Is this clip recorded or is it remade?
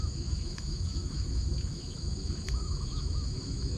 remade